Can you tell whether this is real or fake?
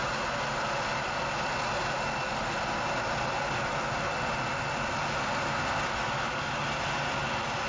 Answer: real